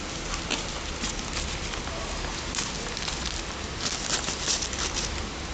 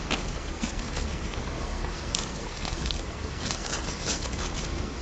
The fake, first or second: second